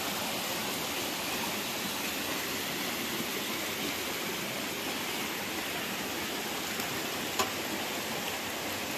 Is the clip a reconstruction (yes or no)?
no